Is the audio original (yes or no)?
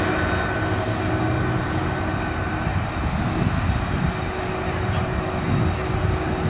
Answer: yes